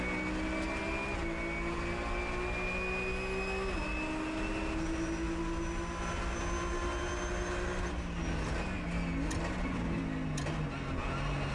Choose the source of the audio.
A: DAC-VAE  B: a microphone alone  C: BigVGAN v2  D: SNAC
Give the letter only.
B